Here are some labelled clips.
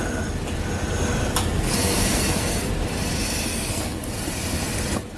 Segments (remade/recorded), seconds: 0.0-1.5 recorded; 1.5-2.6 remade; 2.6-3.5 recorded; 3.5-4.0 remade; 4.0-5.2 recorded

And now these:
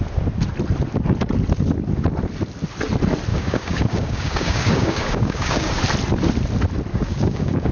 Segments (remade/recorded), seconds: 0.0-3.3 recorded; 3.3-5.8 remade; 5.8-6.9 recorded; 6.9-7.7 remade

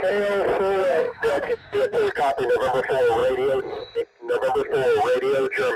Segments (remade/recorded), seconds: 0.0-0.8 recorded; 0.8-2.1 remade; 2.1-5.8 recorded